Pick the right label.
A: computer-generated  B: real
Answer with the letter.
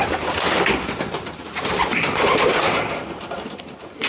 B